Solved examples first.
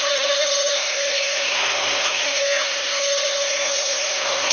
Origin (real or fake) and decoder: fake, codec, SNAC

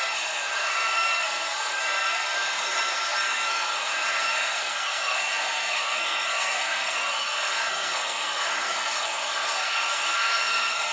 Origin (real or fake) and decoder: fake, codec, SNAC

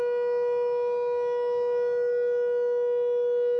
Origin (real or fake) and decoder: real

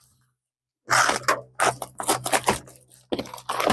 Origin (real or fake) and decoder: real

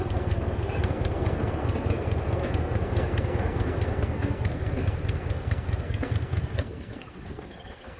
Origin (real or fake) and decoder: fake, codec, SNAC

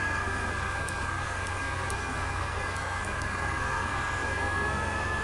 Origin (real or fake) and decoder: fake, codec, SNAC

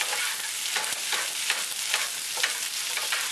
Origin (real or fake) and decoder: real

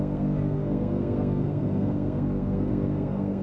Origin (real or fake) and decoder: fake, codec, SNAC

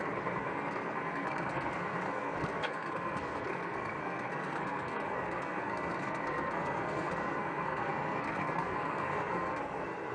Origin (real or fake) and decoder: fake, codec, SNAC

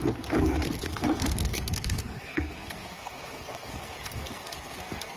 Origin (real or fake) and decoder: fake, codec, SNAC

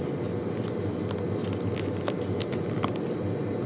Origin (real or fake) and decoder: real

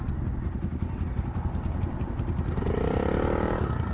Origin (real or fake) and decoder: real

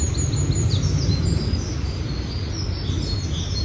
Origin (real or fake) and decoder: real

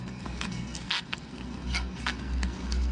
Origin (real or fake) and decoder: fake, codec, SNAC